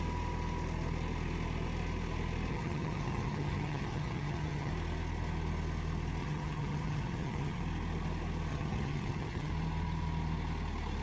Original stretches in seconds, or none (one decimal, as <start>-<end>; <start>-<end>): 0.0-2.5; 4.7-6.2; 7.6-8.5; 9.5-11.0